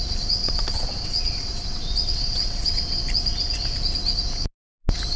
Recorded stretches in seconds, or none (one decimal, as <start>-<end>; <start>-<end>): 0.0-0.4; 3.0-5.2